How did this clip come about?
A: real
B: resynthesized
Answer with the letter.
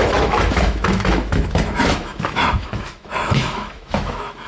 B